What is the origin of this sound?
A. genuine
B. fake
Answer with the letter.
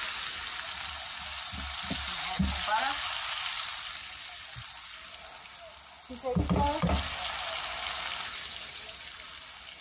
A